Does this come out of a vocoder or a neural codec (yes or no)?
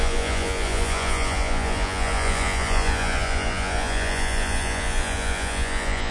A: yes